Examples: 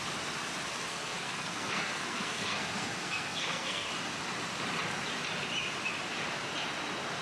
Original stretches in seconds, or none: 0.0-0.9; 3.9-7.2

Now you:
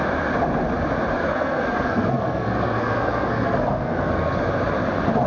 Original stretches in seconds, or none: 0.0-1.2; 4.4-5.3